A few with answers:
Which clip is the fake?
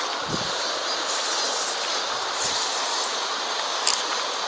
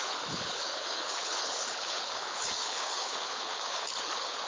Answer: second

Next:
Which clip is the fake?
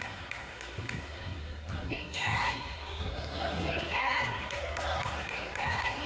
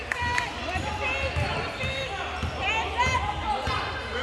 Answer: first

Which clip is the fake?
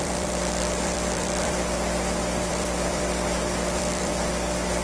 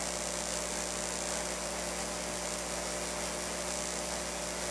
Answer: first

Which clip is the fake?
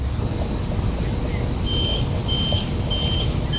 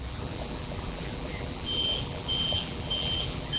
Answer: second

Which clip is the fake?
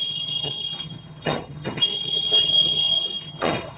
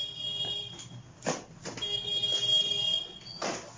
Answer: first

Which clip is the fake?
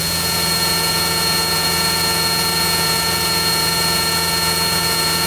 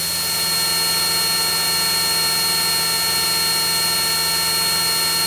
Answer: first